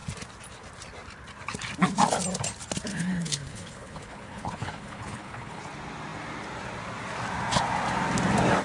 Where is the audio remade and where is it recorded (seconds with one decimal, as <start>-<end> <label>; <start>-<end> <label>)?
0.0-2.9 recorded; 2.9-5.6 remade; 5.6-8.6 recorded